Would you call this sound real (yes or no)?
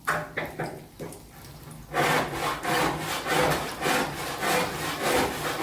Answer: yes